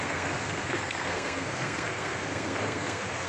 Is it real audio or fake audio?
fake